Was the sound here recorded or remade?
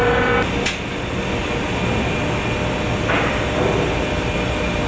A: recorded